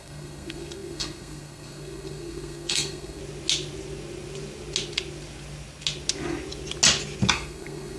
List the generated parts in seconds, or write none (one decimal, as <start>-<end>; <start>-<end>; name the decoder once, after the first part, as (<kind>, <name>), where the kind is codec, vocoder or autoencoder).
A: 0.0-3.2 (codec, SNAC); 7.3-8.0

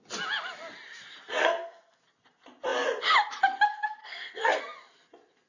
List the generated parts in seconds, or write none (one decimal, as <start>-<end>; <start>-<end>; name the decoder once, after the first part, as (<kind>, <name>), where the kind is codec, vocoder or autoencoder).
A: 1.4-2.0 (codec, SNAC); 4.0-4.6

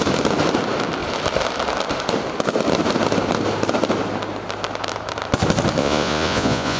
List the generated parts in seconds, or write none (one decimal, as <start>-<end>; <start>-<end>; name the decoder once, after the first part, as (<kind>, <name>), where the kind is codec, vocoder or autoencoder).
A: 5.8-6.8 (vocoder, Vocos)

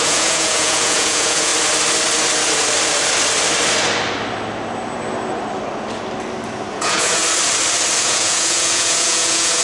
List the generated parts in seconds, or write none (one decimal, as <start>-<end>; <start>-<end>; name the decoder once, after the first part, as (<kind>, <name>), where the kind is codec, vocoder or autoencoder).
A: 0.0-1.5 (vocoder, Vocos); 6.7-7.2; 8.0-9.6